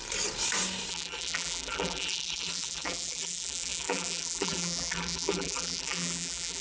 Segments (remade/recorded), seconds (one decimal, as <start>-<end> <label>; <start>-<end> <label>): 0.0-0.9 recorded; 0.9-6.6 remade